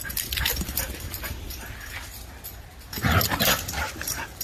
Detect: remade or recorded recorded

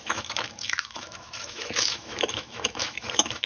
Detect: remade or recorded remade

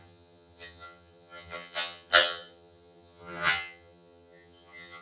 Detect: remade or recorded remade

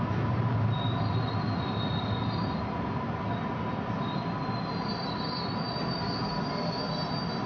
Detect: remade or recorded recorded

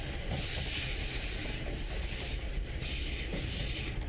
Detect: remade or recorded recorded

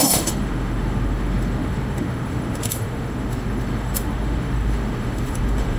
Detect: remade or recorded remade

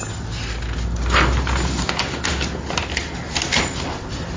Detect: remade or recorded recorded